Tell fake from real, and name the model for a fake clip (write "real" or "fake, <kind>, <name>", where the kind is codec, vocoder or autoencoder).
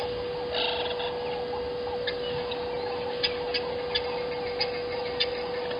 real